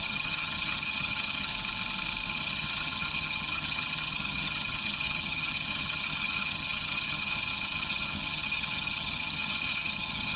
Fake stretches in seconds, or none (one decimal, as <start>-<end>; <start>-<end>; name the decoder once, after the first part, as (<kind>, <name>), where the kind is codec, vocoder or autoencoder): 0.0-1.5 (vocoder, HiFi-GAN); 2.3-10.4

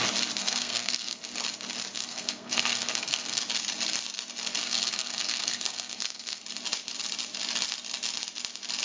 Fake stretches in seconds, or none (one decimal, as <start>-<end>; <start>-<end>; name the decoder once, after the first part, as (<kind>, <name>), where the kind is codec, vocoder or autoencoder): 0.4-1.2 (codec, SNAC); 2.0-3.4; 4.6-6.4

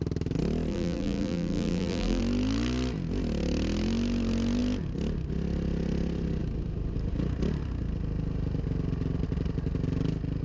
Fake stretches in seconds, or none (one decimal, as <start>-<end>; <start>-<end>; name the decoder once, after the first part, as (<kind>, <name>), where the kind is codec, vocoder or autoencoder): 0.7-2.2 (vocoder, BigVGAN v2)

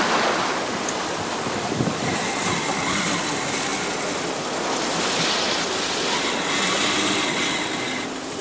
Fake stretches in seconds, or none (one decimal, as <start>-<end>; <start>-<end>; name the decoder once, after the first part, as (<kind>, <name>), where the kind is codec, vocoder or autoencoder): none